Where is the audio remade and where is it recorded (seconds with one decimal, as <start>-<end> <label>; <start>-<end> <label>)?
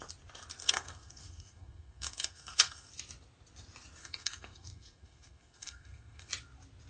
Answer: 0.0-0.6 recorded; 0.6-2.9 remade; 2.9-4.0 recorded; 4.0-6.3 remade; 6.3-6.9 recorded